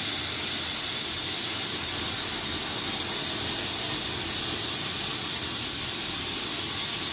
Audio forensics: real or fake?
real